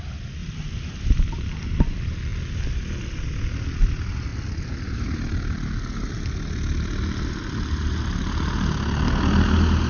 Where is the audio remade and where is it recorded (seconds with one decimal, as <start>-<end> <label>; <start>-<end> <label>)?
0.0-9.9 recorded